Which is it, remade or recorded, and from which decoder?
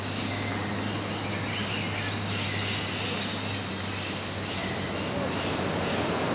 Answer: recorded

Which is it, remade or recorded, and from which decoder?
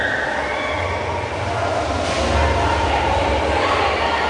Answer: recorded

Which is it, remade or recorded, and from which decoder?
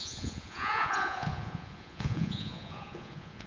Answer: remade, vocoder, Vocos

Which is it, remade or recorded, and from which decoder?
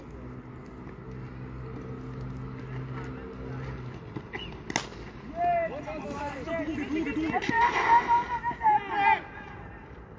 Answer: recorded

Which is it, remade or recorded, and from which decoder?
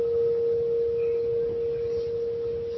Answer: recorded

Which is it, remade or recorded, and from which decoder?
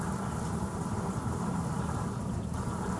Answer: remade, vocoder, BigVGAN v2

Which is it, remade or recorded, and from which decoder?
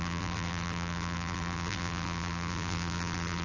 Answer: remade, vocoder, BigVGAN v2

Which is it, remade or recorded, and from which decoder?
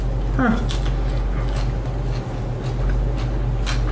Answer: recorded